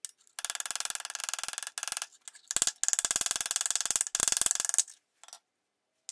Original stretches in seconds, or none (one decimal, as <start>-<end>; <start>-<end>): 0.0-6.1